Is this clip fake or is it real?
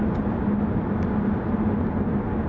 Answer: real